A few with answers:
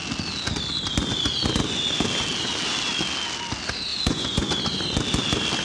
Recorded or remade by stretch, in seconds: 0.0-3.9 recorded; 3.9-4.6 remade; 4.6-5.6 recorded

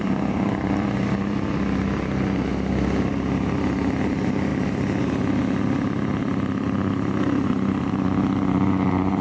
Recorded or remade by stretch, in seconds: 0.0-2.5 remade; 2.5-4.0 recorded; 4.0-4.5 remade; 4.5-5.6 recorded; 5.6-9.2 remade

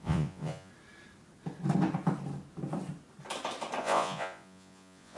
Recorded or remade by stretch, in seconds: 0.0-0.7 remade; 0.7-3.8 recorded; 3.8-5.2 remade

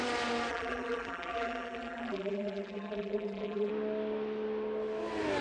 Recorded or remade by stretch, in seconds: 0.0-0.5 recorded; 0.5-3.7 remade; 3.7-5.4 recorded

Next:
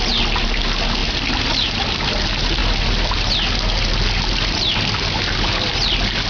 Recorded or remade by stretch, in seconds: 0.0-1.0 recorded; 1.0-1.7 remade; 1.7-6.3 recorded

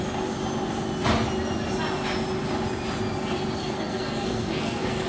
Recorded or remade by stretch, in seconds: 0.0-3.6 recorded; 3.6-5.1 remade